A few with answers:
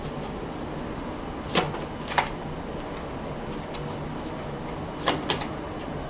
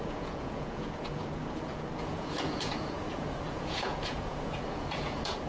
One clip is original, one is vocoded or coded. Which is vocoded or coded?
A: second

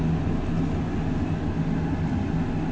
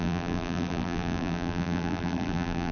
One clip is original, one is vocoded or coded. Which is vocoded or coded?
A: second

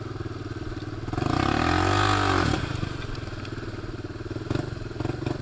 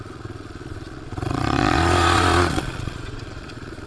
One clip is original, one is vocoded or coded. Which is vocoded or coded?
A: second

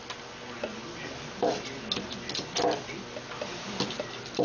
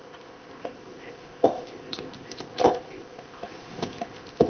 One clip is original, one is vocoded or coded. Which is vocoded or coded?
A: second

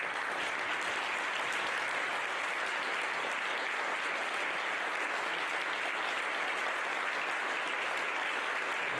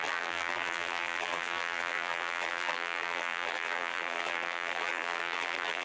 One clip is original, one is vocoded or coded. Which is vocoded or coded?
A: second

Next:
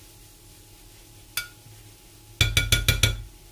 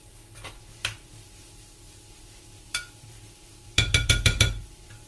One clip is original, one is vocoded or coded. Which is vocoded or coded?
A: second